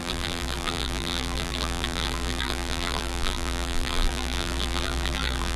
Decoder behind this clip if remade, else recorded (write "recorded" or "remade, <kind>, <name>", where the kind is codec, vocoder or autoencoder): remade, vocoder, BigVGAN v2